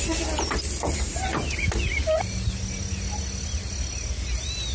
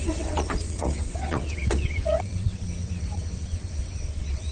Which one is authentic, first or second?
first